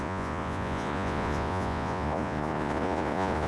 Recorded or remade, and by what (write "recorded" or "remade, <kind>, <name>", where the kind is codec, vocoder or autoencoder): remade, vocoder, Vocos